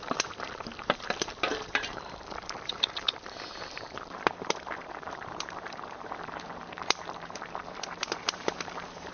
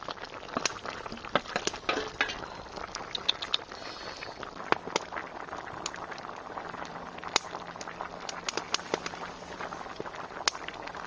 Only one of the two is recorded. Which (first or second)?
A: second